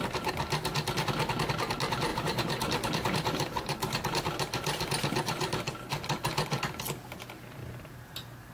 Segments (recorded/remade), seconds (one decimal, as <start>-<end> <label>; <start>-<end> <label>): 0.0-2.1 recorded; 2.1-5.6 remade; 5.6-7.6 recorded; 7.6-8.5 remade